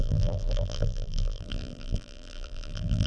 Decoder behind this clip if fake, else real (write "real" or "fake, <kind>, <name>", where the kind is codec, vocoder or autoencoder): fake, vocoder, BigVGAN v2